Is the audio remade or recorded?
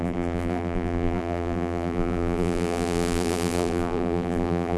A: remade